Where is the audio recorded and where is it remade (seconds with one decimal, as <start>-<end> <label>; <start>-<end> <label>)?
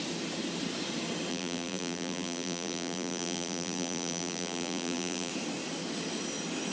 0.0-1.3 recorded; 1.3-5.3 remade; 5.3-6.7 recorded